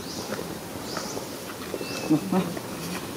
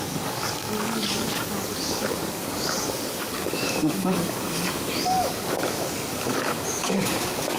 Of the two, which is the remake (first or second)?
second